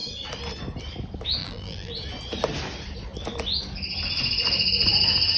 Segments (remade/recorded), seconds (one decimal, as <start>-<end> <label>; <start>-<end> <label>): 0.0-1.4 recorded; 1.4-1.9 remade; 1.9-5.4 recorded